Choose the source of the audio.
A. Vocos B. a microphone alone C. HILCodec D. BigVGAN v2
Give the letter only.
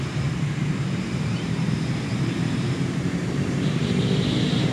D